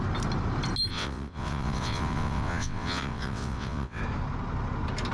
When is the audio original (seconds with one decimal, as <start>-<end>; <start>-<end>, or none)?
0.0-0.9; 4.0-5.1